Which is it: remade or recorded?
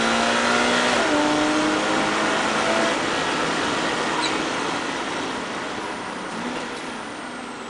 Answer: recorded